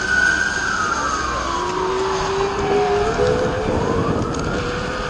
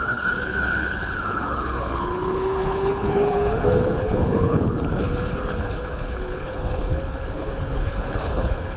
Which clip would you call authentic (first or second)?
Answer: first